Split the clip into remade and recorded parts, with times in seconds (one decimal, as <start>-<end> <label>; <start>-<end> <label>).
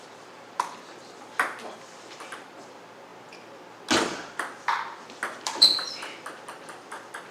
0.0-3.1 remade; 3.1-4.0 recorded; 4.0-7.3 remade